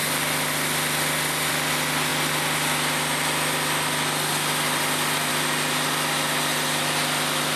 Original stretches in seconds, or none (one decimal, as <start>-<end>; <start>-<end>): 0.0-7.6